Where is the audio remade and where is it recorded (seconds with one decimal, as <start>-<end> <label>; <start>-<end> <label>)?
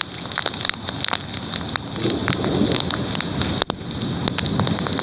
0.0-5.0 recorded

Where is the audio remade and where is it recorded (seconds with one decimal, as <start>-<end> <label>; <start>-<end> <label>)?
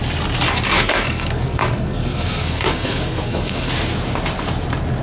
0.0-0.7 recorded; 0.7-3.7 remade; 3.7-5.0 recorded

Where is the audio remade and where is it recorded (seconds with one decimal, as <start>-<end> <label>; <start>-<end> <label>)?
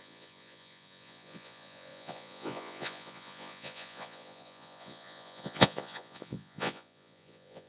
0.0-7.7 remade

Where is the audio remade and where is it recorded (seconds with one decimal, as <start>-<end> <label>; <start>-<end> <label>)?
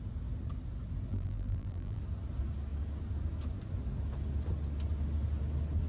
0.0-1.1 recorded; 1.1-2.0 remade; 2.0-5.9 recorded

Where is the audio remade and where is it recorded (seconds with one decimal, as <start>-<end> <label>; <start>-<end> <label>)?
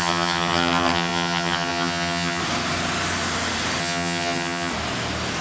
0.0-2.4 remade; 2.4-3.8 recorded; 3.8-4.7 remade; 4.7-5.4 recorded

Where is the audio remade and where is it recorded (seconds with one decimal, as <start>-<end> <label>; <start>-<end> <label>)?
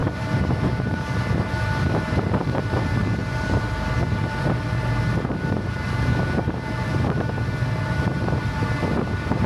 0.0-9.5 recorded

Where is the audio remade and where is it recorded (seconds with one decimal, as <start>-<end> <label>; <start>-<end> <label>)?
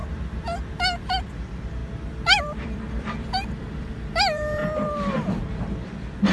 0.0-1.0 recorded; 1.0-1.8 remade; 1.8-2.4 recorded; 2.4-4.6 remade; 4.6-6.3 recorded